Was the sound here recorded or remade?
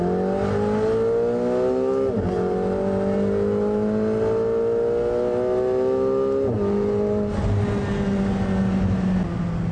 recorded